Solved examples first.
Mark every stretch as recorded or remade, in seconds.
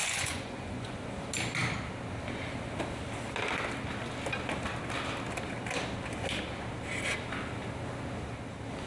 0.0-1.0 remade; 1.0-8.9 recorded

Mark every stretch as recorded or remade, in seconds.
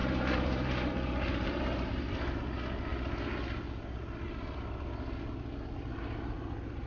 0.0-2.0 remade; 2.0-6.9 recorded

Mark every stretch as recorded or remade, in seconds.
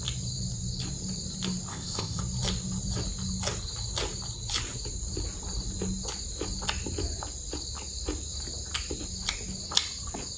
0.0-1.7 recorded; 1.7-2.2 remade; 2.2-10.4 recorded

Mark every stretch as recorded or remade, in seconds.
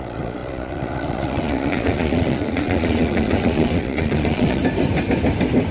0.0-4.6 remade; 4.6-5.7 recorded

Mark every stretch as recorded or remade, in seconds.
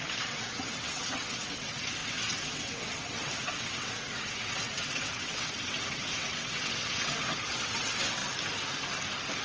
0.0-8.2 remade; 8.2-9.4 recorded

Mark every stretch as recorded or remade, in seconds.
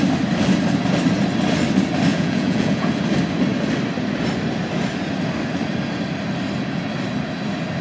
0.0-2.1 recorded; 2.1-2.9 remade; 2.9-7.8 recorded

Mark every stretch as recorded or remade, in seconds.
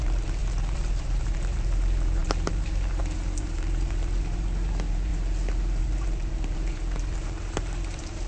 0.0-5.1 remade; 5.1-5.8 recorded; 5.8-8.3 remade